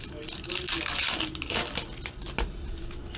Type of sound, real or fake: real